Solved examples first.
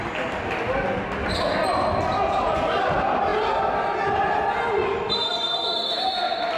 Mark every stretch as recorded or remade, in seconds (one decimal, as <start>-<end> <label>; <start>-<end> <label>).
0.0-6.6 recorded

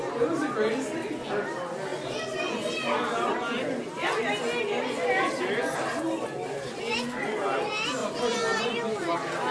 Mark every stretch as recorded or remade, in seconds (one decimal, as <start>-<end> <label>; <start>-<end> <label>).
0.0-9.5 recorded

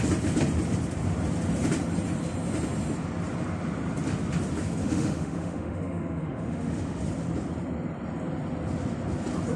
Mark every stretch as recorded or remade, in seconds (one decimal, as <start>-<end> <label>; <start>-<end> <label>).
0.0-4.8 recorded; 4.8-7.0 remade; 7.0-9.6 recorded